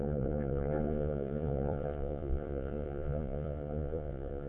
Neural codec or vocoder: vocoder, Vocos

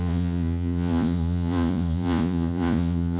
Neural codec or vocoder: vocoder, Vocos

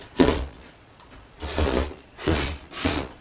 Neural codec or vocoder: vocoder, Vocos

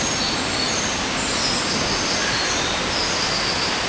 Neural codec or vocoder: none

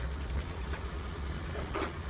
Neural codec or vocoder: vocoder, Vocos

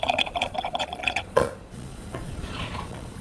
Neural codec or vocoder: vocoder, Vocos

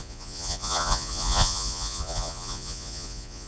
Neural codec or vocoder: vocoder, Vocos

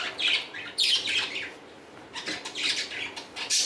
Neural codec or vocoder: none